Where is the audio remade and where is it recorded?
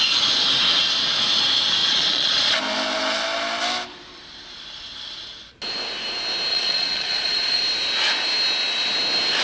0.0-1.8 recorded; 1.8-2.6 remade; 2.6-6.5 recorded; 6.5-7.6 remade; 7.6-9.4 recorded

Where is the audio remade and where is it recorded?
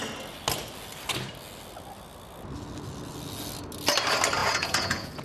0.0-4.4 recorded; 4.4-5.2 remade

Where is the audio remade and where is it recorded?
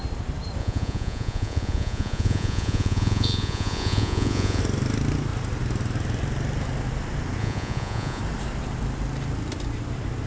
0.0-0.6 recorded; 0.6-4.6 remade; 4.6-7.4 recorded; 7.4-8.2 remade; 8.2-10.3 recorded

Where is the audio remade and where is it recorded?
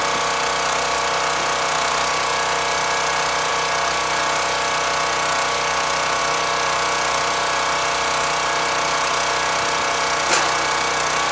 0.0-11.3 recorded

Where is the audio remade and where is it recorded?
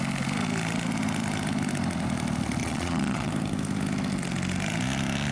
0.0-2.6 recorded; 2.6-3.3 remade; 3.3-5.3 recorded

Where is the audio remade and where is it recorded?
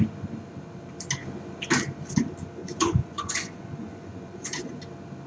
0.0-2.6 recorded; 2.6-4.8 remade; 4.8-5.3 recorded